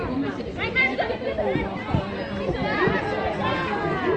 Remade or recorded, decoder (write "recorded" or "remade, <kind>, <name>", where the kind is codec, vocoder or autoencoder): recorded